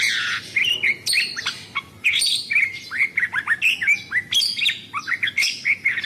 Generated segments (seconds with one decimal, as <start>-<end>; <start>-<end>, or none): none